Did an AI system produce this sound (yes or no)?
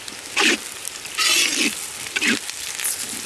no